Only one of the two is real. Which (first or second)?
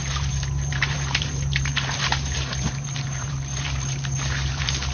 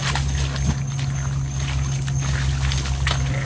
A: second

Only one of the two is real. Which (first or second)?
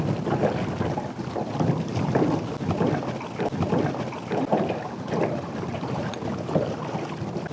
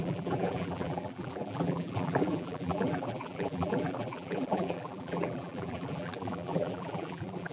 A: first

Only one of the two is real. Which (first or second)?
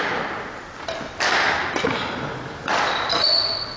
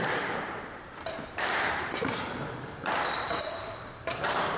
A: first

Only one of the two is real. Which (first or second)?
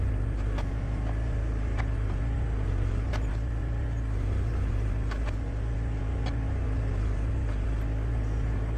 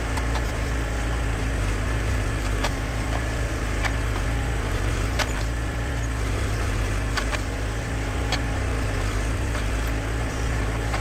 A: first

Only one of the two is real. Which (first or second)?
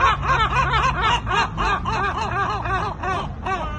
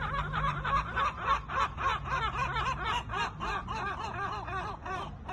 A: first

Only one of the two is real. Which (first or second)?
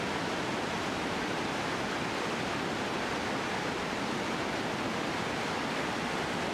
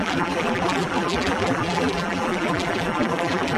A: first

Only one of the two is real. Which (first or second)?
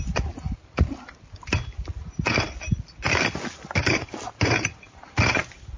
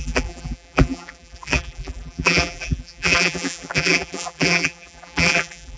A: first